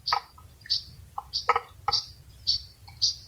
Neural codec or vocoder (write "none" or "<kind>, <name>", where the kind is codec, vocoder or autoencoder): none